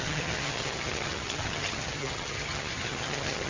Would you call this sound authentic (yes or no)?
no